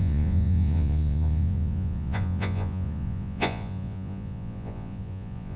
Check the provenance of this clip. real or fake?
fake